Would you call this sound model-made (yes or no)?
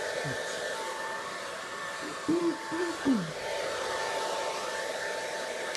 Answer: no